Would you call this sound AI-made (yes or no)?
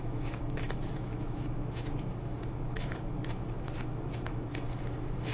yes